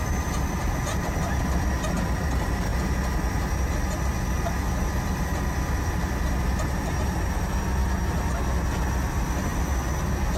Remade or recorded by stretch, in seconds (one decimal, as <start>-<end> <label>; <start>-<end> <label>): 0.0-10.4 recorded